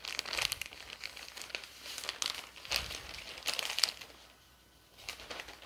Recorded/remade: recorded